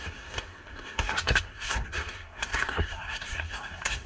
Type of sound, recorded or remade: remade